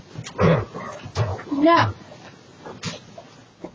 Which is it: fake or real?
real